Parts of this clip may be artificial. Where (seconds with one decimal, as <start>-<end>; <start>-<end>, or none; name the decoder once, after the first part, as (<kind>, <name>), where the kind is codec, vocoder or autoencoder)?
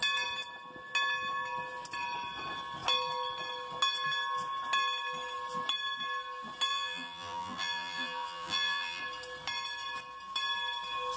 6.7-9.0 (vocoder, BigVGAN v2)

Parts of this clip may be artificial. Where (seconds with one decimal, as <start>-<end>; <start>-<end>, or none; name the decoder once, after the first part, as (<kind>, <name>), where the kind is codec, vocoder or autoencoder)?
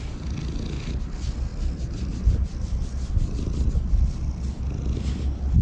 none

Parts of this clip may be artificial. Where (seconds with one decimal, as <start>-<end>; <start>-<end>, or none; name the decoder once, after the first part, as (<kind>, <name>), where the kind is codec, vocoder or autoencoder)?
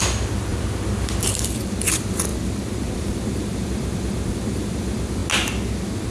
0.0-5.2 (vocoder, BigVGAN v2)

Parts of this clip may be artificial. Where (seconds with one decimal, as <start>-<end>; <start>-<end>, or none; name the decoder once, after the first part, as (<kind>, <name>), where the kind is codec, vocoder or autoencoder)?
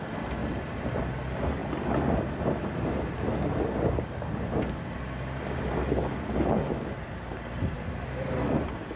0.4-1.0 (vocoder, BigVGAN v2)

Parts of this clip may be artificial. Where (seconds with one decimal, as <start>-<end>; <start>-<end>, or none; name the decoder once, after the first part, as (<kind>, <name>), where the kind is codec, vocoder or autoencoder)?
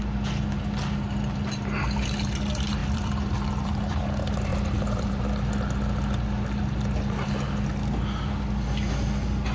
2.8-3.7 (vocoder, BigVGAN v2); 4.5-5.2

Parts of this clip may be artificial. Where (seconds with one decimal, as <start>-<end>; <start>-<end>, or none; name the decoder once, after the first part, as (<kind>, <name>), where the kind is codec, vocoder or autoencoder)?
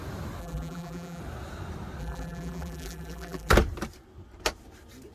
0.4-1.2 (vocoder, BigVGAN v2); 2.0-3.5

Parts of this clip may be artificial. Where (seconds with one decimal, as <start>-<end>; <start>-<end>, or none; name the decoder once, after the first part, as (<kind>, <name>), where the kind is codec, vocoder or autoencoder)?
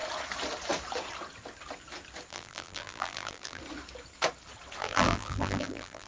2.3-3.6 (vocoder, BigVGAN v2); 4.8-6.1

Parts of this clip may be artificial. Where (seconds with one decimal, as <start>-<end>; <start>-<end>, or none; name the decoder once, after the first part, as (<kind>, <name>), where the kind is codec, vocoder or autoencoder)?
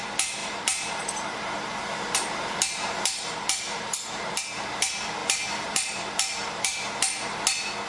0.4-4.3 (vocoder, BigVGAN v2); 5.2-7.0